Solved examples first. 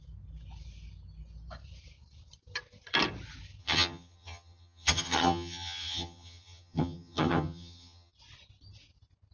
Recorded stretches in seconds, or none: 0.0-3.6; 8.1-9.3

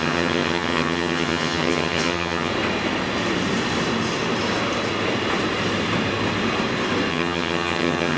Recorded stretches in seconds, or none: 2.5-7.1

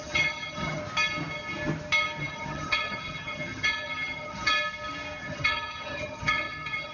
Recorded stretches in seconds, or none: 0.8-2.2; 4.5-5.2

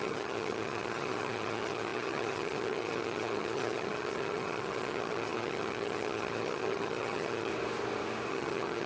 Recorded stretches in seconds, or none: 7.5-8.3

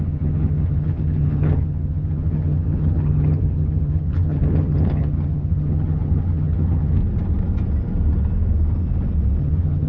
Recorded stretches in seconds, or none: 7.0-9.4

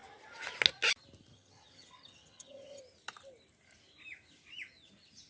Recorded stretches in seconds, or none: 0.0-1.3; 2.8-5.3

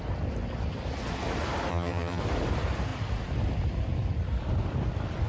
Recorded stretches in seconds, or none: 0.0-1.7; 2.2-5.3